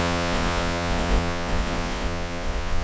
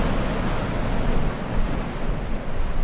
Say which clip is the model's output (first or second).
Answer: first